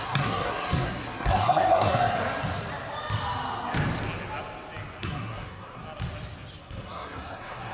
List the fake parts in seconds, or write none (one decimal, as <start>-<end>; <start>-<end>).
0.0-2.2; 5.0-5.8; 6.6-7.7